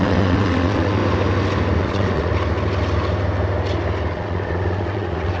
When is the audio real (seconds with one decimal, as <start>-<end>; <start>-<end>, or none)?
1.0-1.8; 2.3-4.1